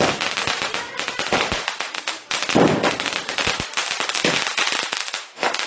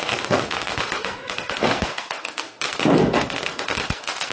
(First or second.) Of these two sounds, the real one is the first